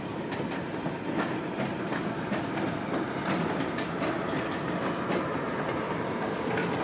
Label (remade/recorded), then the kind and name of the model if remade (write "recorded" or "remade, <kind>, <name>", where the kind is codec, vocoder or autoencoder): recorded